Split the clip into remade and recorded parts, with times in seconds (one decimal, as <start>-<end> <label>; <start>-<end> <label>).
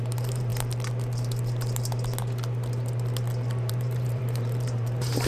0.0-0.5 remade; 0.5-3.7 recorded; 3.7-5.3 remade